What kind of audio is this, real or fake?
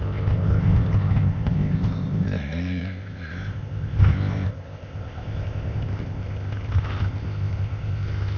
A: fake